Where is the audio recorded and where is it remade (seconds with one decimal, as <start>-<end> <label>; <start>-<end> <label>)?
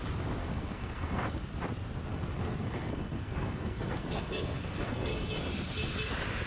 0.0-0.4 recorded; 0.4-1.4 remade; 1.4-2.1 recorded; 2.1-5.3 remade; 5.3-6.5 recorded